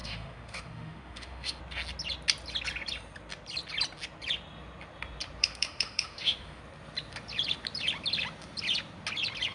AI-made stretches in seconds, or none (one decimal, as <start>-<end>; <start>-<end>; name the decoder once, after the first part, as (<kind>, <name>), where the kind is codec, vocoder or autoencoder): 0.0-1.6 (autoencoder, DAC-VAE); 5.4-6.6